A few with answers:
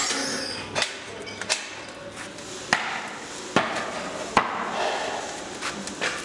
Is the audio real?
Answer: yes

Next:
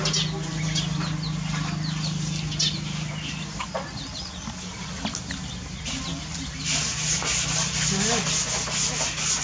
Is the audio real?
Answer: yes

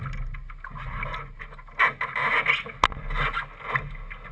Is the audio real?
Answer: yes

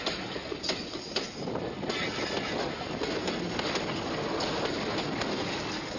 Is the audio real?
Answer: yes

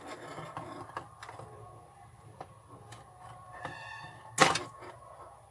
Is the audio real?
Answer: yes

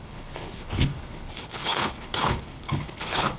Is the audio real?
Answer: no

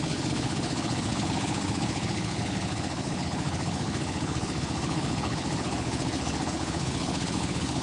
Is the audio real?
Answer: no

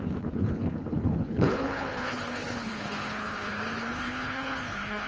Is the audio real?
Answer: no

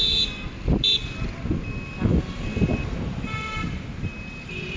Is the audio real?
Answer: yes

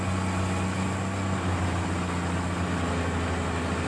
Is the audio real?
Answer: yes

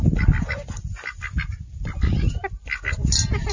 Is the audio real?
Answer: yes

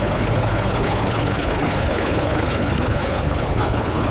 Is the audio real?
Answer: no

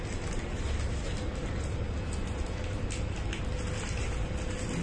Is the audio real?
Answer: yes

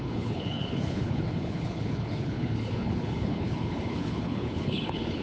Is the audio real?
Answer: no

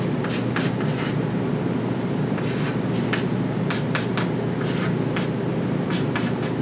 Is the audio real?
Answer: yes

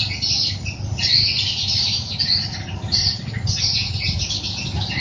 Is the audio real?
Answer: yes